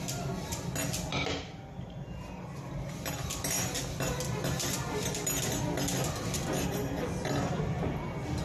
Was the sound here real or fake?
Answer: real